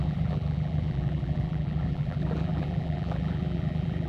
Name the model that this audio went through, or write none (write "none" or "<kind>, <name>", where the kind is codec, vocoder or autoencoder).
vocoder, BigVGAN v2